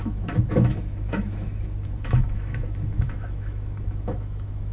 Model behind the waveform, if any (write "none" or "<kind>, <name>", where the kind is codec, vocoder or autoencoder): autoencoder, DAC-VAE